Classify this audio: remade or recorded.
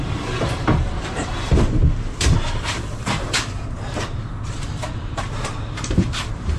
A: remade